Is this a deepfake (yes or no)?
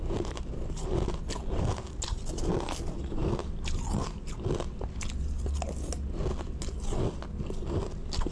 no